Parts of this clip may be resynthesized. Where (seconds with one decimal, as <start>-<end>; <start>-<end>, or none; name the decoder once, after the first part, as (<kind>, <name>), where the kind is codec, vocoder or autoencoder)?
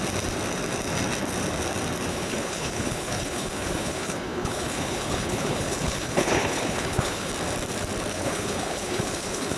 2.1-7.3 (codec, HILCodec); 8.1-9.6